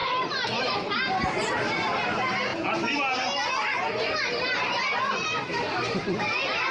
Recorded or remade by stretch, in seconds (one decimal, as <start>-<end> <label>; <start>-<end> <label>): 0.0-2.5 remade; 2.5-4.4 recorded; 4.4-6.7 remade